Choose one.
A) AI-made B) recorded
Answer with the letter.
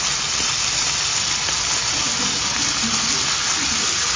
B